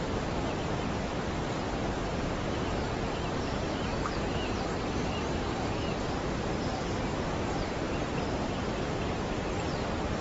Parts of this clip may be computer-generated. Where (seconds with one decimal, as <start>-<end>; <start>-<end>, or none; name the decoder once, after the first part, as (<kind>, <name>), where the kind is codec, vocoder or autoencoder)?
0.0-2.7 (vocoder, BigVGAN v2); 3.8-10.2